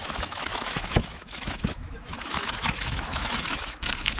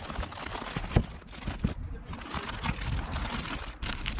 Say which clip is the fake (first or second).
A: first